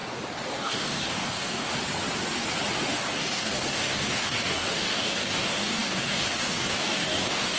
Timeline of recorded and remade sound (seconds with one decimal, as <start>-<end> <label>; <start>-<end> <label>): 0.0-0.5 recorded; 0.5-1.7 remade; 1.7-2.9 recorded; 2.9-7.6 remade